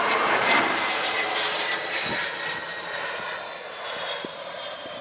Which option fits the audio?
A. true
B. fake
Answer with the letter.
B